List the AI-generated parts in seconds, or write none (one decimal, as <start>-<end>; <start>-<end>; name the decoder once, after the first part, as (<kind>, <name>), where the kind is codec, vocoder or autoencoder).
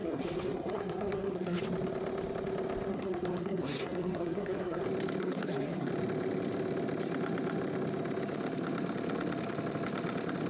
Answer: 0.0-1.6 (codec, SNAC); 2.9-4.8; 5.2-5.9